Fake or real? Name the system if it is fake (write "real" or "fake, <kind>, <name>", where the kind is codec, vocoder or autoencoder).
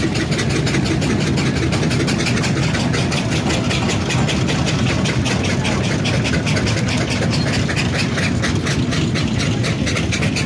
real